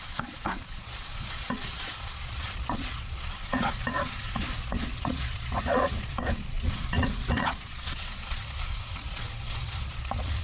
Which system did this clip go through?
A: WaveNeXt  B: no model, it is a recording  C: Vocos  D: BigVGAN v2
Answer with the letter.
C